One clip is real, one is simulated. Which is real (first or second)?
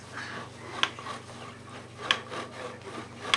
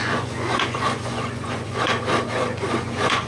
first